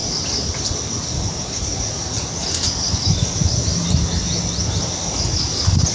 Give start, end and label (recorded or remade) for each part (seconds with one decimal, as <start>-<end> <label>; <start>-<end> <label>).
0.0-3.4 recorded; 3.4-4.2 remade; 4.2-5.9 recorded